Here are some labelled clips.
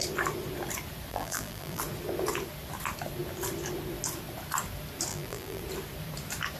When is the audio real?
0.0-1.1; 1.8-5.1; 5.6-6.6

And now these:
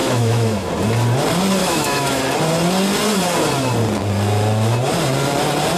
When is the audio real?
0.7-1.6; 2.2-5.8

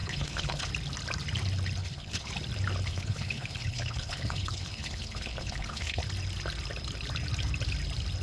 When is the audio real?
0.7-1.8; 2.3-2.9; 6.0-8.2